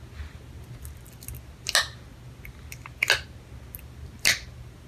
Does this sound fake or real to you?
real